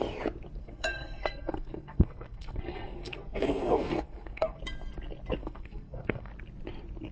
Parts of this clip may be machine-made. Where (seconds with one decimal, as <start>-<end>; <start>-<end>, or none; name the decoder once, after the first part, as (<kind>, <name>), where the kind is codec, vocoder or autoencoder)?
0.6-4.6 (codec, SNAC); 5.4-6.3